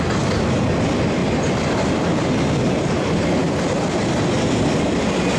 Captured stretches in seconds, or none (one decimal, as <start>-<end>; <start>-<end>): 0.0-5.4